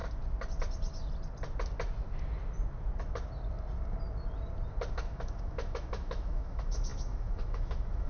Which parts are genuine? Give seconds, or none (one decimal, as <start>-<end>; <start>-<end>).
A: 0.0-4.9

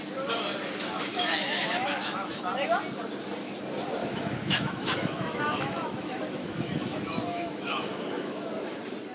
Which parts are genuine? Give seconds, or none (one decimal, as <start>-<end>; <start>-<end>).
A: 0.0-1.1; 2.4-4.0; 8.5-9.1

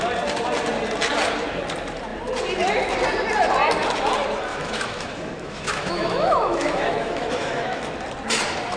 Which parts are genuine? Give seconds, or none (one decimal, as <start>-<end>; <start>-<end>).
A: 0.0-4.5; 7.8-8.8